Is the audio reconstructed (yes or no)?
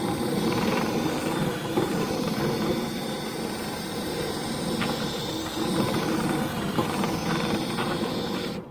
no